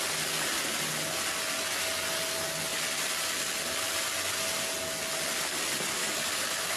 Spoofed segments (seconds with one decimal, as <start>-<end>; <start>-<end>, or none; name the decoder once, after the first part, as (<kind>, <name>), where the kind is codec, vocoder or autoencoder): none